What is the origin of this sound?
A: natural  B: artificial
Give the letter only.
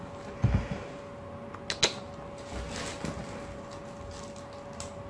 A